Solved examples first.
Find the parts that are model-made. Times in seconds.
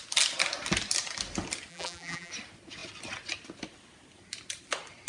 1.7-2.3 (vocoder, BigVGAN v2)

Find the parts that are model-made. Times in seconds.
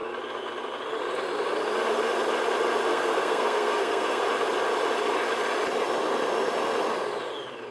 2.9-4.2 (codec, SNAC)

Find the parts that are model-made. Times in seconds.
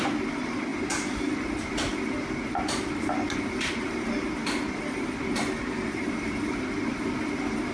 none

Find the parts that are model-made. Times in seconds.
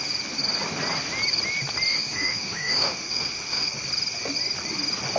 1.9-3.7 (autoencoder, DAC-VAE)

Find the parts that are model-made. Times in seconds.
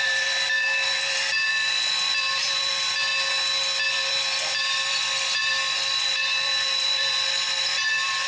0.0-3.1 (vocoder, BigVGAN v2); 3.9-8.3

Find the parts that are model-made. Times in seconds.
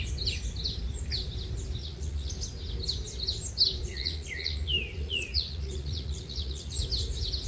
1.8-2.3 (vocoder, Vocos); 3.9-6.8